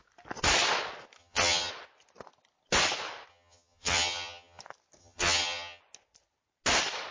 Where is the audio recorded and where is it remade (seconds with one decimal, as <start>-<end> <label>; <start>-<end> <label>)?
0.0-1.2 recorded; 1.2-1.7 remade; 1.7-3.3 recorded; 3.3-4.6 remade; 4.6-5.0 recorded; 5.0-5.8 remade; 5.8-7.1 recorded